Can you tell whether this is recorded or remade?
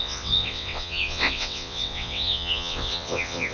remade